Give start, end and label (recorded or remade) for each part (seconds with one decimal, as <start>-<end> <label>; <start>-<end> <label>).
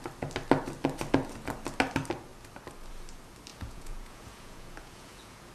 0.0-3.5 recorded; 3.5-5.5 remade